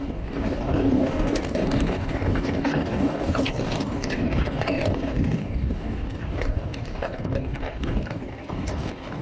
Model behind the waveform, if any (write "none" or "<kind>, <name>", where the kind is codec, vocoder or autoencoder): codec, DAC